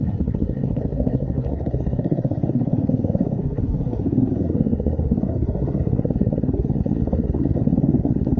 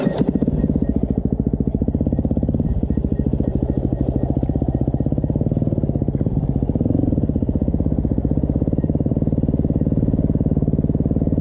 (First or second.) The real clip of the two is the second